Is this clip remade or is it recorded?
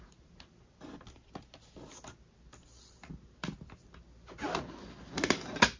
recorded